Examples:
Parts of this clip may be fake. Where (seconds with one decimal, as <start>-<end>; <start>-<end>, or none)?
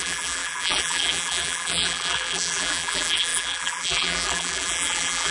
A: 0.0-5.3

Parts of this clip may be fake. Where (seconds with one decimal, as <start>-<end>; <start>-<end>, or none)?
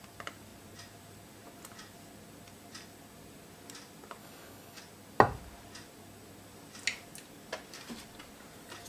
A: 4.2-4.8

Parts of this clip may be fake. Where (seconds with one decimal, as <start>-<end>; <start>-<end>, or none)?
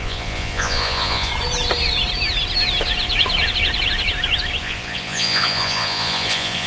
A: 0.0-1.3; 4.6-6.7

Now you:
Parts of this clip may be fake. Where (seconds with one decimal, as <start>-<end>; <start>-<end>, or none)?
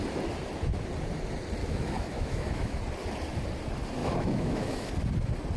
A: 1.6-2.8; 4.0-4.9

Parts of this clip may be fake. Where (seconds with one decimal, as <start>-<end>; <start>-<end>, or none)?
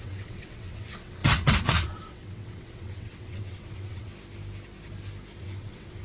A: 0.0-4.1; 5.4-6.0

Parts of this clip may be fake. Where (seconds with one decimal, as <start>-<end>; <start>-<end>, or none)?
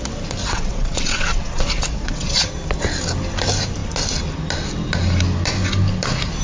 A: 0.4-2.5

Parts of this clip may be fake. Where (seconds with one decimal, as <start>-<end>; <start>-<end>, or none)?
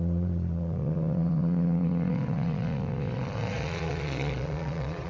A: 0.0-5.1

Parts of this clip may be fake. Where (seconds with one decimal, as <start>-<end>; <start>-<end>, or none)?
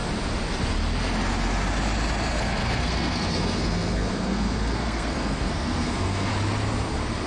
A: 2.3-6.3